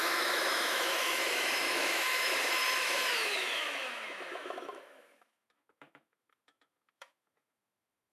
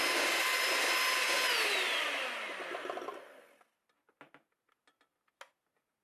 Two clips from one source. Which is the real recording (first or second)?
second